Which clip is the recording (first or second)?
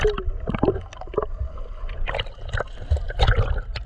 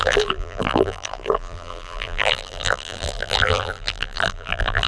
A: first